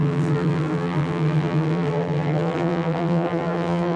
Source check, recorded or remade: remade